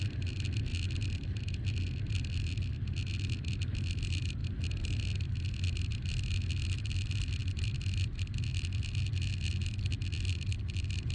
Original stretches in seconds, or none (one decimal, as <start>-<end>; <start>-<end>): 0.0-11.1